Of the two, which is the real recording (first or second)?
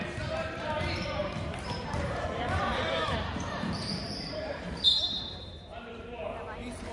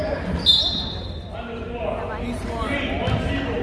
second